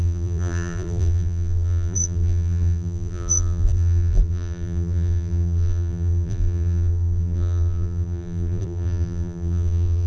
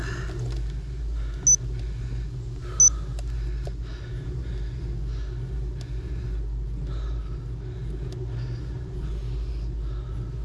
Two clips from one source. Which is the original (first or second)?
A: second